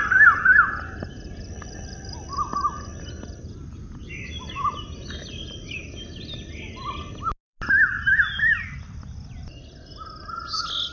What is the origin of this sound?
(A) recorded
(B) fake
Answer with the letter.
A